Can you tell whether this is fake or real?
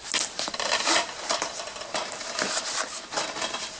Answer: real